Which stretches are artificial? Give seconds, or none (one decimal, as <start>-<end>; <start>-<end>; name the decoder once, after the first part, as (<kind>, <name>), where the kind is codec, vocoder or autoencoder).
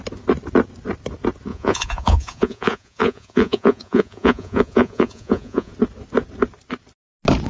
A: 1.5-5.7 (vocoder, Vocos)